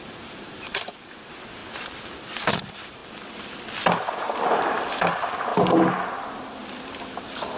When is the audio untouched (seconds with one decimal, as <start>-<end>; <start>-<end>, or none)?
1.6-2.5; 3.0-4.2; 5.5-7.6